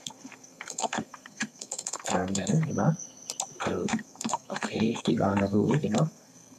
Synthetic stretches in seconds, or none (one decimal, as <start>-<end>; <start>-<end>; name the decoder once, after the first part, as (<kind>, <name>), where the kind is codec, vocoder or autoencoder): 0.0-2.7 (codec, SNAC); 3.6-6.6